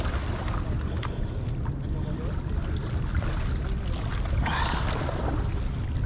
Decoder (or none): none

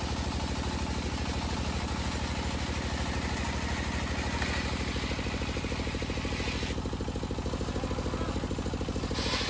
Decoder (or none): none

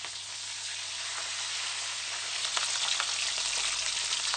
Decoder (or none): none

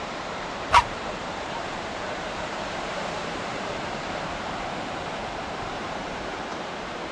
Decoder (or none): vocoder, BigVGAN v2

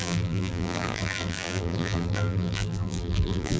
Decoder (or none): vocoder, BigVGAN v2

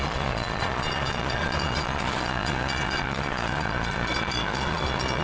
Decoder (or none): vocoder, Vocos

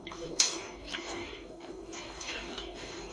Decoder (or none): codec, DAC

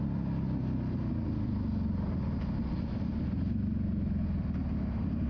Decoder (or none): none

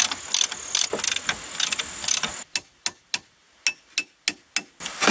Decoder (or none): none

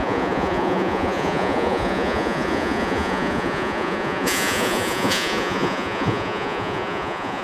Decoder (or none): vocoder, Vocos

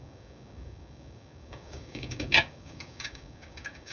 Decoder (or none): codec, DAC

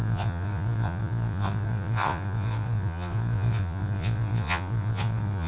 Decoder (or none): vocoder, Vocos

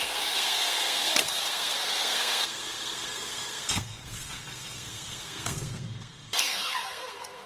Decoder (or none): codec, SNAC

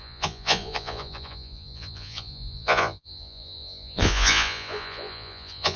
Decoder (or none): vocoder, Vocos